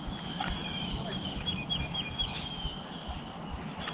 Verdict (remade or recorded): remade